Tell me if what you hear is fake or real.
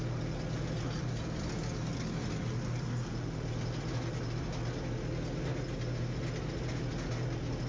real